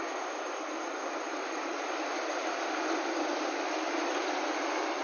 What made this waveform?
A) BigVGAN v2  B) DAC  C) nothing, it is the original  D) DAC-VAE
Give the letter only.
A